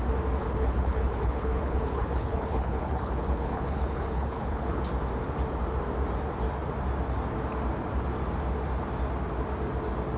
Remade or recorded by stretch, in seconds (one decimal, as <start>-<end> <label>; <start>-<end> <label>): 0.0-0.4 recorded; 0.4-4.8 remade; 4.8-10.2 recorded